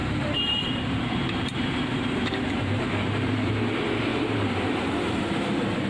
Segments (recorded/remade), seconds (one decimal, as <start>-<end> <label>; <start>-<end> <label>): 0.0-3.5 remade; 3.5-4.1 recorded; 4.1-5.9 remade